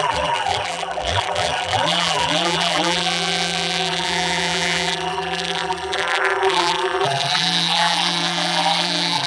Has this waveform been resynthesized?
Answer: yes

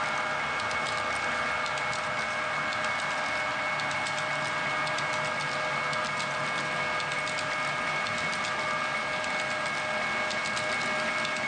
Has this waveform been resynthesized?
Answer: no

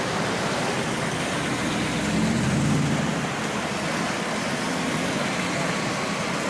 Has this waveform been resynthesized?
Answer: no